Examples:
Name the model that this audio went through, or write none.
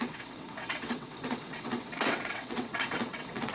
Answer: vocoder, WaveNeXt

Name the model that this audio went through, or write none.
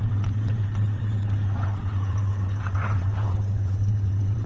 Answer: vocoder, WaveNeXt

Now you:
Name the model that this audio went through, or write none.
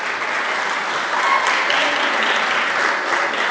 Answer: none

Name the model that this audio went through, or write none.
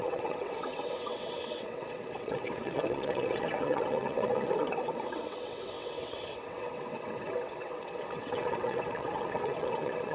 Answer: vocoder, WaveNeXt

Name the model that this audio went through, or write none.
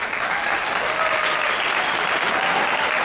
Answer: none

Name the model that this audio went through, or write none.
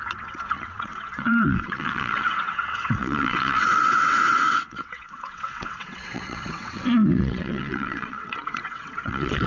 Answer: vocoder, WaveNeXt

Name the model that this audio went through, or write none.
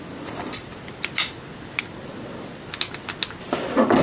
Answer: none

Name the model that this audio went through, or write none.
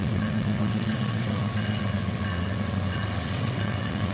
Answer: vocoder, WaveNeXt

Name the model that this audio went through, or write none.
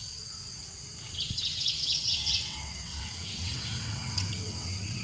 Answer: vocoder, WaveNeXt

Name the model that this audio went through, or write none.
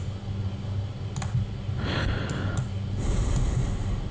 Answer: none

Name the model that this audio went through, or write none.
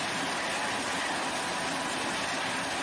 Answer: none